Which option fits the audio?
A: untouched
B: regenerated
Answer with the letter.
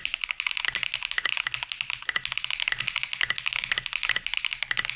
A